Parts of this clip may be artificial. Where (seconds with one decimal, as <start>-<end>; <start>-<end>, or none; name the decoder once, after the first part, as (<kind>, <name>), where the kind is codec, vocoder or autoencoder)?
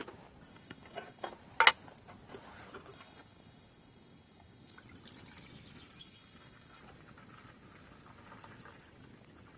0.5-1.3 (codec, DAC); 2.9-4.8; 6.0-6.8